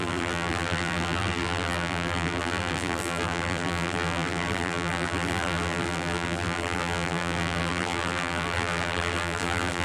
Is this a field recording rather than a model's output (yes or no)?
no